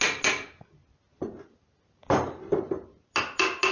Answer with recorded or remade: recorded